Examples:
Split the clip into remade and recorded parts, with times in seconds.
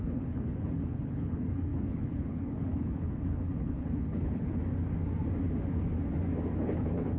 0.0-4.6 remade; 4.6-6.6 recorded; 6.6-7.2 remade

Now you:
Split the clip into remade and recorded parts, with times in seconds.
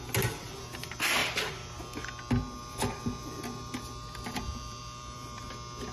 0.0-3.2 recorded; 3.2-5.4 remade; 5.4-5.9 recorded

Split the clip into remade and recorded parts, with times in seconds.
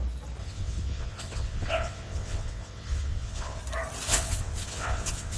0.0-0.4 recorded; 0.4-3.6 remade; 3.6-4.1 recorded; 4.1-5.4 remade